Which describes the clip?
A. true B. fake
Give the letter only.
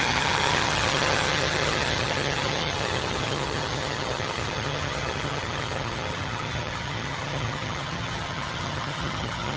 B